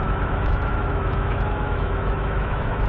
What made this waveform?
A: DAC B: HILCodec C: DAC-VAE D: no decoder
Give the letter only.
C